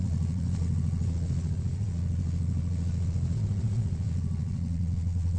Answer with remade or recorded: remade